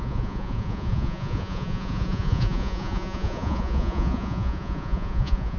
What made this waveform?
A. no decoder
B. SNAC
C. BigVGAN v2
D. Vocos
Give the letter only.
D